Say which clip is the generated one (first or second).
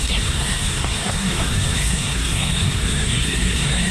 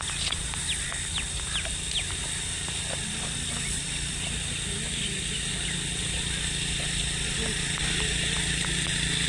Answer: first